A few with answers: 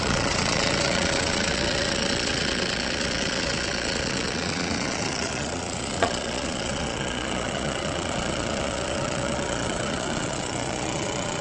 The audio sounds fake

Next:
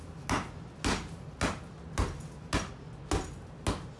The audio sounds real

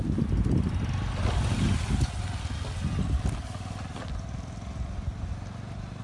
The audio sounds real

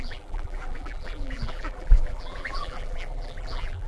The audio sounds fake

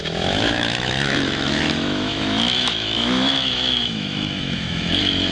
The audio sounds fake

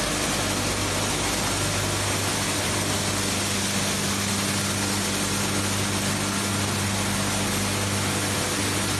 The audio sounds real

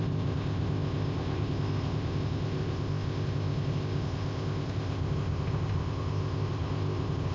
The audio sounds fake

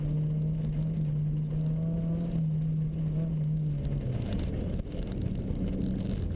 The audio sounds real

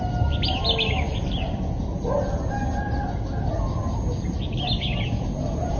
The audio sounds real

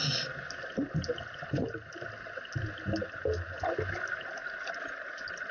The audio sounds real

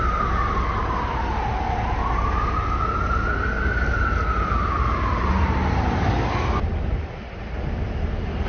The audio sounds real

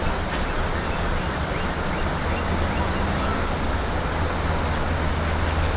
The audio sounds real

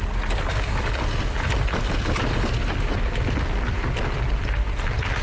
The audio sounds real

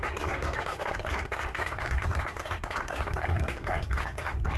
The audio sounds fake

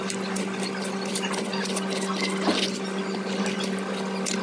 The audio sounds real